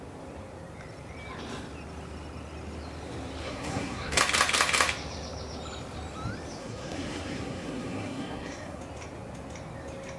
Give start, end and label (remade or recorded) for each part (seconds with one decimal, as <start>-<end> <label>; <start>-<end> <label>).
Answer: 0.0-3.4 recorded; 3.4-4.2 remade; 4.2-6.6 recorded; 6.6-8.8 remade; 8.8-10.2 recorded